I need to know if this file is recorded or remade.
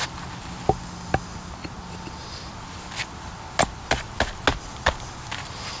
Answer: recorded